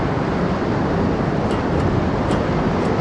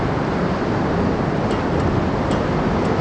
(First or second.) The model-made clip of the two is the first